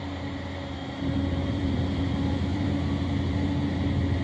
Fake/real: fake